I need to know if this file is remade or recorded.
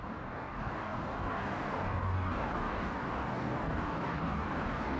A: remade